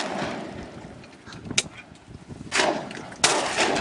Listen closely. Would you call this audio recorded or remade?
recorded